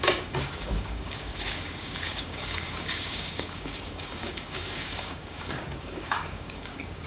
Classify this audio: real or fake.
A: fake